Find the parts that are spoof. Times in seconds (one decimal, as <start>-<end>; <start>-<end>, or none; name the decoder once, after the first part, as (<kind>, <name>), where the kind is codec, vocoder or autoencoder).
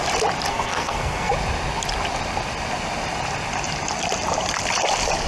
0.5-1.3 (codec, SNAC)